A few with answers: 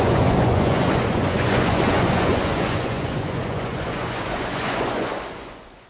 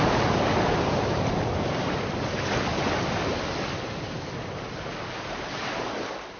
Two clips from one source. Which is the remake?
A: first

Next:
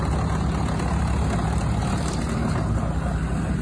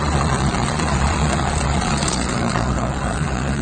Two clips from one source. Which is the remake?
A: second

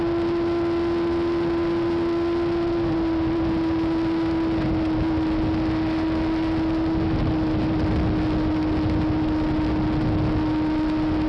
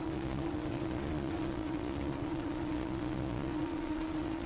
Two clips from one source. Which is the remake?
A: second